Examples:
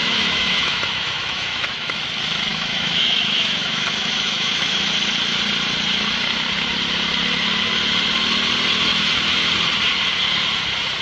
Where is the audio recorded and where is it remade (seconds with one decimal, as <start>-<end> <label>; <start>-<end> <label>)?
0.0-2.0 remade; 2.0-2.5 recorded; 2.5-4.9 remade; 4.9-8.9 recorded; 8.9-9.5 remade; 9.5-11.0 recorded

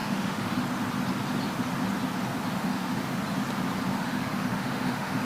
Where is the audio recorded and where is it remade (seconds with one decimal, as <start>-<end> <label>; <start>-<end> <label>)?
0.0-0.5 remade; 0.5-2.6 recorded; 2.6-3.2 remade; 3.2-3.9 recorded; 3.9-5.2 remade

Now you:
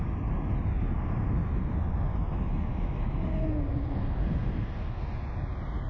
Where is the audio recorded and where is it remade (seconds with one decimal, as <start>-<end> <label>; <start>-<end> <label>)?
0.0-2.1 recorded; 2.1-3.3 remade; 3.3-5.9 recorded

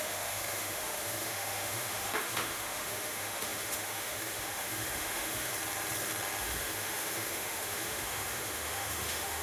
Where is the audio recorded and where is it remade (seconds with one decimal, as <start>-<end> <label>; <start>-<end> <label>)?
0.0-5.5 remade; 5.5-6.4 recorded; 6.4-9.4 remade

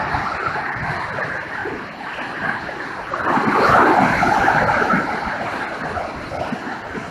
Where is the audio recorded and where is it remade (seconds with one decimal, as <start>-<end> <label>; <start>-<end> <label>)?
0.0-7.1 recorded

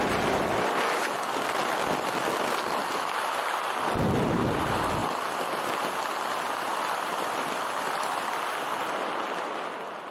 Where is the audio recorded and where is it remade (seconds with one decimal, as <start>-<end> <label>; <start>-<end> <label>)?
0.0-10.1 recorded

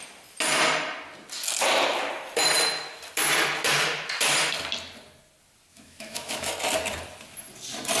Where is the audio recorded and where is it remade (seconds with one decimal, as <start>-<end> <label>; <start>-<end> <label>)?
0.0-5.7 recorded; 5.7-6.5 remade; 6.5-8.0 recorded